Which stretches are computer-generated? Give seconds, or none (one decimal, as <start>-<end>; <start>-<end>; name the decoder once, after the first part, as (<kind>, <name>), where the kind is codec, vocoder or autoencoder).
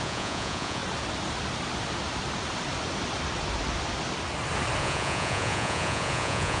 0.0-0.8 (vocoder, Vocos); 4.8-6.6